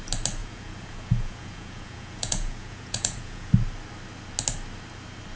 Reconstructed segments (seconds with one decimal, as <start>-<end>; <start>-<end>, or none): 0.4-3.5